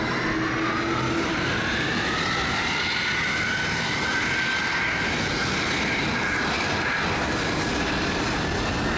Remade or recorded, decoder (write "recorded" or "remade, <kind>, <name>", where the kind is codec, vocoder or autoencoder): recorded